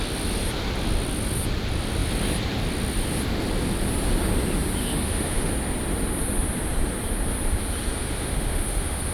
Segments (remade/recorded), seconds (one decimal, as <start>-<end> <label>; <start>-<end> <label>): 0.0-4.8 recorded; 4.8-5.5 remade; 5.5-8.0 recorded; 8.0-9.1 remade